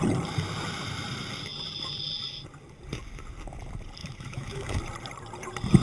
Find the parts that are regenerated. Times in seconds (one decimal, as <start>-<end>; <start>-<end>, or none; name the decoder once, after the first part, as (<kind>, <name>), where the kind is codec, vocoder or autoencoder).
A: 4.0-4.8 (autoencoder, DAC-VAE)